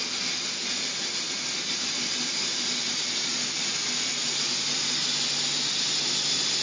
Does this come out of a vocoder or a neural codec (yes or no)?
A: no